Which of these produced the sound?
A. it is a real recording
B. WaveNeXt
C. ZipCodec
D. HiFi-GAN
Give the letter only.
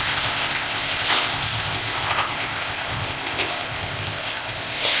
C